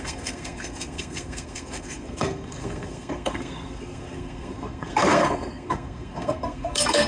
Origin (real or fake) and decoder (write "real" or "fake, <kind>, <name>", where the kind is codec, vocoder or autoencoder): fake, codec, SNAC